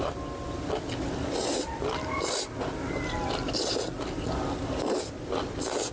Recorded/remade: recorded